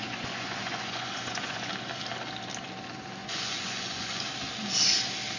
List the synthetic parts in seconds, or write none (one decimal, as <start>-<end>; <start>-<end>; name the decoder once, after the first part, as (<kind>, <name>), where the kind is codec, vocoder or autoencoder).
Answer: 0.0-1.7 (vocoder, Vocos); 3.2-4.2